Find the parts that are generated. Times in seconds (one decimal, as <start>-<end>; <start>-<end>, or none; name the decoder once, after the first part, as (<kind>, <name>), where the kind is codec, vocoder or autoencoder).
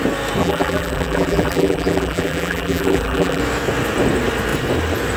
0.4-3.4 (vocoder, BigVGAN v2)